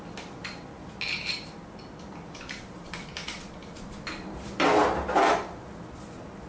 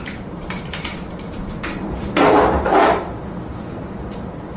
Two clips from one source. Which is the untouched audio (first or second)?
first